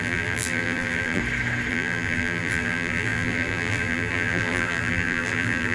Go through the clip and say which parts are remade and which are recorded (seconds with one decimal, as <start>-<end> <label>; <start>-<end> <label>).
0.0-1.2 remade; 1.2-1.7 recorded; 1.7-5.7 remade